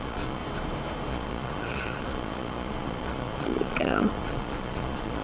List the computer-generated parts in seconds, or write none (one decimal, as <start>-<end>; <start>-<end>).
0.0-0.4; 1.1-5.2